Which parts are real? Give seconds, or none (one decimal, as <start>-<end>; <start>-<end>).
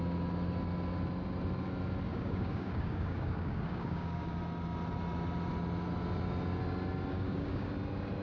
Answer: 0.0-2.1; 4.4-7.1; 7.7-8.2